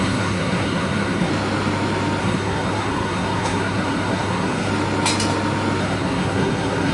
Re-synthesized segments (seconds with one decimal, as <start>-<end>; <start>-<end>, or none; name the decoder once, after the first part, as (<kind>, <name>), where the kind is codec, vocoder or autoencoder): 0.0-1.3 (codec, SNAC); 2.2-4.7; 5.8-6.9